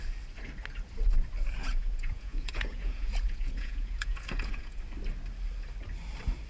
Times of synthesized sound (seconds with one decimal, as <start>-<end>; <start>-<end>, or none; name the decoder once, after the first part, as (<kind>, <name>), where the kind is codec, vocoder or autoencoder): 1.6-4.8 (vocoder, Vocos)